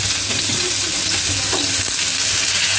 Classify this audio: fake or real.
real